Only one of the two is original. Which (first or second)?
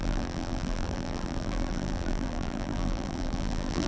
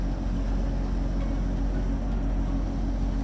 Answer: second